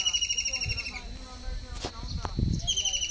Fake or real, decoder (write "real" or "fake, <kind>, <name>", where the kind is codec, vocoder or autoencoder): real